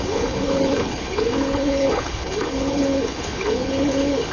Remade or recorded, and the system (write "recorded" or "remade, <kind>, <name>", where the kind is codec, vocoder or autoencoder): remade, codec, HILCodec